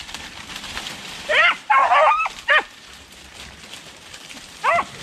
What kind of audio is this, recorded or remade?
remade